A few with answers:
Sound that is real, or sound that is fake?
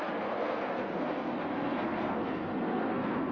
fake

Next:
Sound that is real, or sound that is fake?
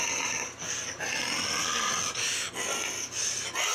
real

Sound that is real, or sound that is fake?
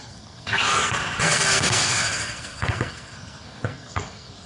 fake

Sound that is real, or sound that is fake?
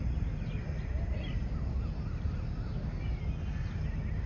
real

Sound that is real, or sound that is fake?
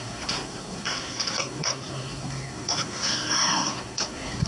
fake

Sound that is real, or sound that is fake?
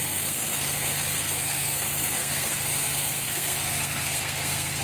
fake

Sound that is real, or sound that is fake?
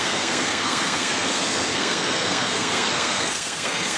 fake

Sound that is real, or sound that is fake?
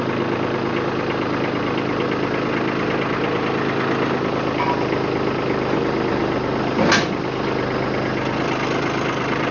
real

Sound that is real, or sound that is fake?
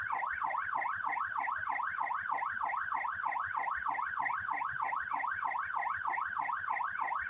real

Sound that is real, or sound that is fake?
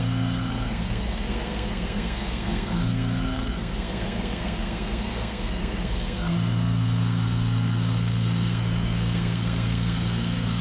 fake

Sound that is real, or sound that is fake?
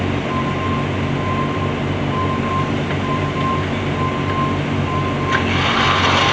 real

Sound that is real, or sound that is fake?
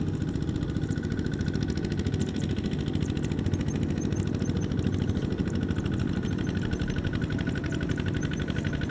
real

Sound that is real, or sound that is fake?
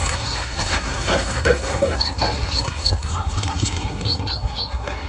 fake